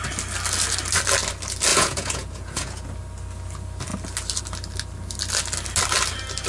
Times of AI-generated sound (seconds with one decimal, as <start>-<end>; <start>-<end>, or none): 1.7-2.9

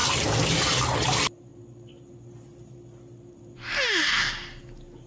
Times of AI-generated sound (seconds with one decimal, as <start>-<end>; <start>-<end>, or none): none

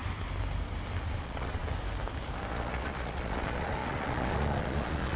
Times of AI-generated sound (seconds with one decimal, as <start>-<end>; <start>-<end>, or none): 1.2-1.6; 2.5-5.2

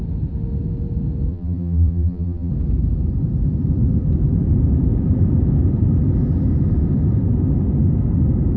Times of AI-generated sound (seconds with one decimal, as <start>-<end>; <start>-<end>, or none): 1.3-2.5

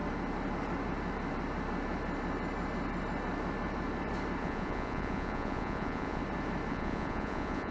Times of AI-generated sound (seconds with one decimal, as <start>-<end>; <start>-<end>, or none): 4.4-6.2; 6.7-7.7

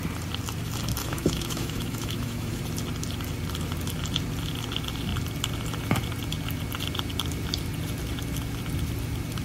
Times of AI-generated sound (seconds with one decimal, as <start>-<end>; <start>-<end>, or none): 1.0-2.6

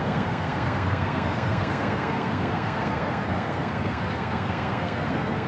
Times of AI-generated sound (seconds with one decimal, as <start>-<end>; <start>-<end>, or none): 0.0-5.5